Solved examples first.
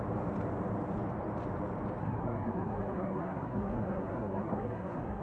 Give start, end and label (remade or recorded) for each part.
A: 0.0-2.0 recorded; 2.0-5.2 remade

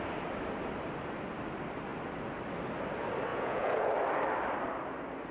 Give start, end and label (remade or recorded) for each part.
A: 0.0-3.3 recorded; 3.3-3.9 remade; 3.9-5.3 recorded

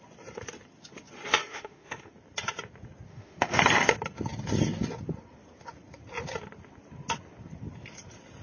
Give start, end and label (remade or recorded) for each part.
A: 0.0-1.5 recorded; 1.5-2.1 remade; 2.1-3.1 recorded; 3.1-3.6 remade; 3.6-8.4 recorded

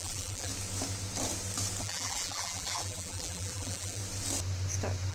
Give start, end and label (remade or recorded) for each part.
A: 0.0-0.5 remade; 0.5-1.8 recorded; 1.8-4.0 remade; 4.0-5.1 recorded